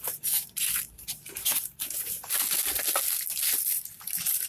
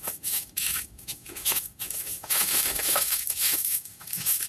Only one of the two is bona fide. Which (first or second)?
first